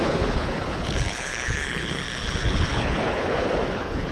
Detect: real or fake fake